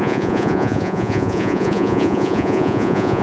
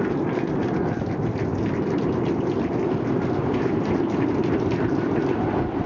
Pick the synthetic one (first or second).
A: first